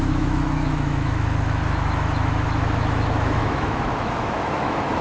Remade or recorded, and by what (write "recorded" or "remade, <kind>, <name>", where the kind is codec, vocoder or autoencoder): remade, autoencoder, DAC-VAE